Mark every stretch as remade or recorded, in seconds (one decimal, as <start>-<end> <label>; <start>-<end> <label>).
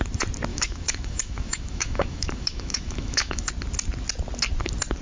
0.0-0.5 recorded; 0.5-3.5 remade; 3.5-5.0 recorded